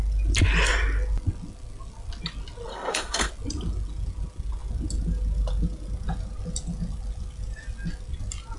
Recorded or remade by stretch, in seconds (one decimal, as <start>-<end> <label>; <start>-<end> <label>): 0.0-2.7 recorded; 2.7-3.3 remade; 3.3-8.6 recorded

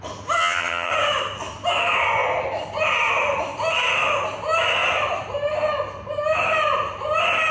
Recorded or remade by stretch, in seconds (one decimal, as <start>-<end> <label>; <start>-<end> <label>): 0.0-0.4 recorded; 0.4-0.9 remade; 0.9-7.5 recorded

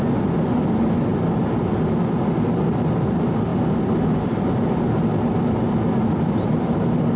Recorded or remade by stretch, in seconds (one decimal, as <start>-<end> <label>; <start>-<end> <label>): 0.0-7.2 recorded

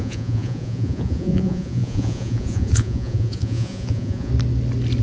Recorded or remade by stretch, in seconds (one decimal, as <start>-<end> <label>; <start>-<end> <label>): 0.0-4.3 remade; 4.3-5.0 recorded

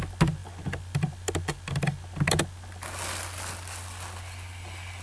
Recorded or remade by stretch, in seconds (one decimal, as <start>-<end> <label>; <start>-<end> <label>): 0.0-5.0 recorded

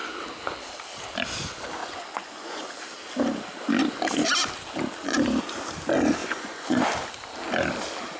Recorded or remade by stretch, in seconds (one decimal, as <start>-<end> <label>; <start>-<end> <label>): 0.0-1.8 recorded; 1.8-2.7 remade; 2.7-6.2 recorded; 6.2-6.8 remade; 6.8-8.2 recorded

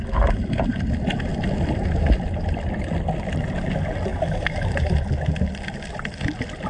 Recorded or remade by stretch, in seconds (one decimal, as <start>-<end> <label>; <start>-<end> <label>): 0.0-4.1 recorded; 4.1-4.9 remade; 4.9-6.7 recorded